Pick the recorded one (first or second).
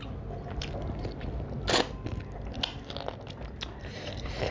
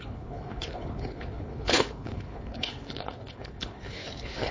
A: first